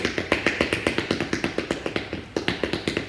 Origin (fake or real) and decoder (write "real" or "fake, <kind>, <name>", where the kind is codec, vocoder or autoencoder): real